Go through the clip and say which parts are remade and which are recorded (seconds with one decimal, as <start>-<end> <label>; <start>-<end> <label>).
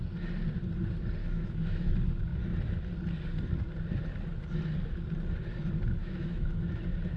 0.0-1.2 recorded; 1.2-1.9 remade; 1.9-6.0 recorded; 6.0-6.8 remade; 6.8-7.2 recorded